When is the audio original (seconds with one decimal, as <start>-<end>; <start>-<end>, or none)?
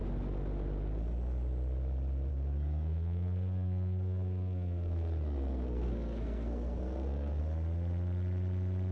0.0-2.3; 7.4-8.9